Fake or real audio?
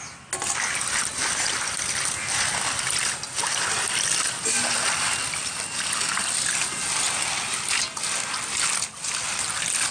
real